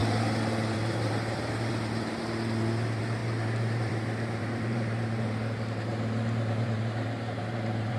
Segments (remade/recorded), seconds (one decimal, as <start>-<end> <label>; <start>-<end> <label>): 0.0-8.0 remade